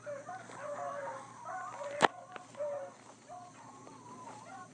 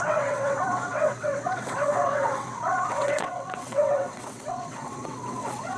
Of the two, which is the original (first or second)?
first